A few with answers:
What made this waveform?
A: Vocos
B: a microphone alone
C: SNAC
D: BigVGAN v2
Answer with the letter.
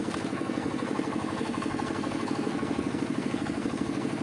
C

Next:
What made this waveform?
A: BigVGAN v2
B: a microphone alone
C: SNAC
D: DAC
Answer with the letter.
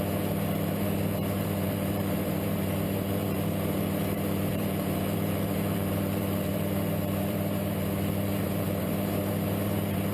A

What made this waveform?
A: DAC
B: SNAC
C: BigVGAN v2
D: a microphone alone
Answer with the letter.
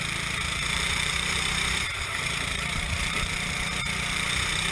C